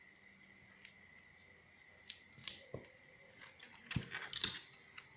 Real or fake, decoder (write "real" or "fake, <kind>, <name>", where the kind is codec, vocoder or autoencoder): real